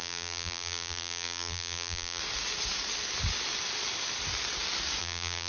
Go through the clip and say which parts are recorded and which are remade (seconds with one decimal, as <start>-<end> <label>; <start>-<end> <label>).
0.0-2.2 remade; 2.2-5.0 recorded; 5.0-5.5 remade